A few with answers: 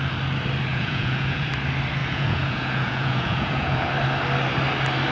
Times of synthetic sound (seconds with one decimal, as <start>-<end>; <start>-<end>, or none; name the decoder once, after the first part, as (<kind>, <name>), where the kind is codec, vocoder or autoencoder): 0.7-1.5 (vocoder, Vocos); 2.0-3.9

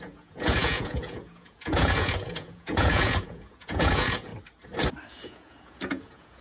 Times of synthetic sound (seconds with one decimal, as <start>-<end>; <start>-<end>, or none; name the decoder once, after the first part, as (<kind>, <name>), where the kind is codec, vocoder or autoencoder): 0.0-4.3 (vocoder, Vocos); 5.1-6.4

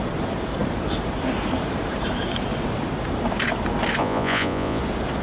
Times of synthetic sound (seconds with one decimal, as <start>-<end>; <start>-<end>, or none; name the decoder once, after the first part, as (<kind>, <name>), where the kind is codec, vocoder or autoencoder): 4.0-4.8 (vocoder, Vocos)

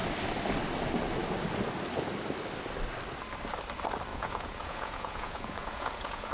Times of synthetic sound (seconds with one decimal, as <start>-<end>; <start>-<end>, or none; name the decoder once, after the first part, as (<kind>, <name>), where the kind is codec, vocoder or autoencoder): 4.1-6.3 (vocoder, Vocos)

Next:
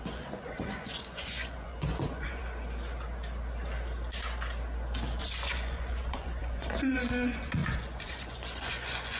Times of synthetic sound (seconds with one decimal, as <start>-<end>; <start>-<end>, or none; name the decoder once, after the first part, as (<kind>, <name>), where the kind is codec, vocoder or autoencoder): 0.0-2.4 (vocoder, Vocos); 5.2-9.2